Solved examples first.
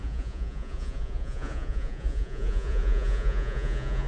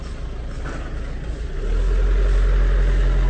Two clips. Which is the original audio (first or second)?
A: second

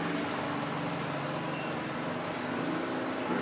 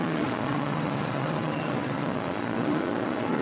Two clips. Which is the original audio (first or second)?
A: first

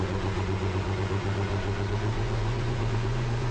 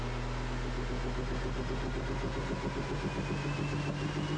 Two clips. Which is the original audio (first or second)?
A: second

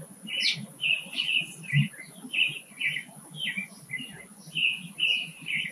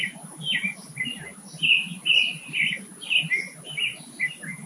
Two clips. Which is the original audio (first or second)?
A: second